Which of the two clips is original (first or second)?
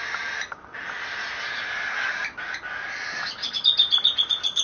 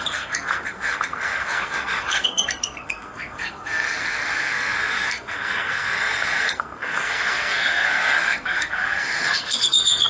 first